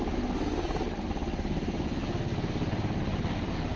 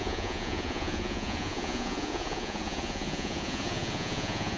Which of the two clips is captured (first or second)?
first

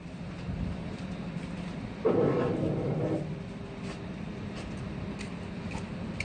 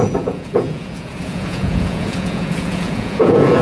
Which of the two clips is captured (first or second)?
first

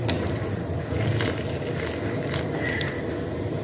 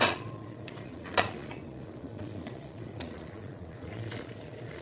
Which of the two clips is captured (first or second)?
first